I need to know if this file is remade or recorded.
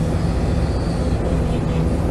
recorded